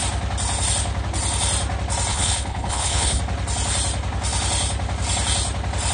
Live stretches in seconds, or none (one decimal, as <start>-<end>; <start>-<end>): 0.0-2.1; 3.2-5.9